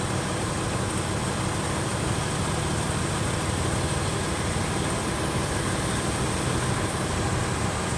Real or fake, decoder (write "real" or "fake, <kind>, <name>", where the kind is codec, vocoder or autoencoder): real